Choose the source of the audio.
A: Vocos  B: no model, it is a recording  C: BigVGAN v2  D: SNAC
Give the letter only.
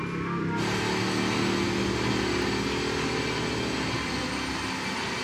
B